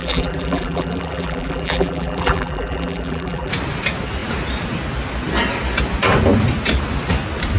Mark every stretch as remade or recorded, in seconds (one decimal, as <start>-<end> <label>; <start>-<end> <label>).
0.0-3.5 remade; 3.5-7.6 recorded